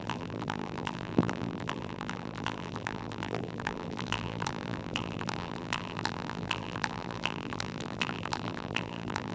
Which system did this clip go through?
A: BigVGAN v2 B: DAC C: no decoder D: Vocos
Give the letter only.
A